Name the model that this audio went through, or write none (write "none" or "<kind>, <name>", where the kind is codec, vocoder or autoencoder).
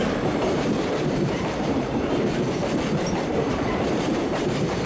vocoder, BigVGAN v2